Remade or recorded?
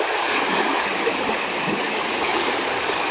remade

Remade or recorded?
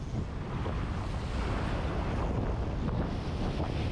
recorded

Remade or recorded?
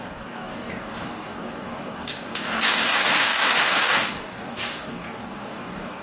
remade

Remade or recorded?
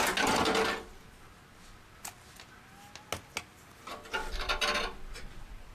recorded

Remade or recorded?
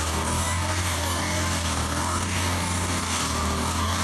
remade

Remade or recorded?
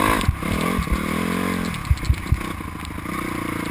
recorded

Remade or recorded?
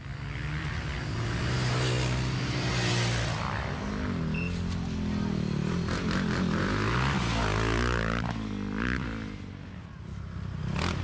recorded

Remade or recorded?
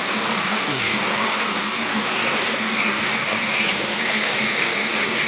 remade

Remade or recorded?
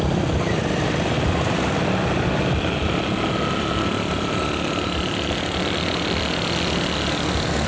recorded